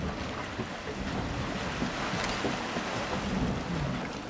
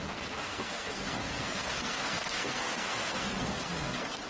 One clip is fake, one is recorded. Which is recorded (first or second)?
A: first